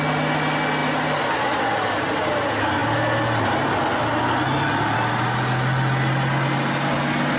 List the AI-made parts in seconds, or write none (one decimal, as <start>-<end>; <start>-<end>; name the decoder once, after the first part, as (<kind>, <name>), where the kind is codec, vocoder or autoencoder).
none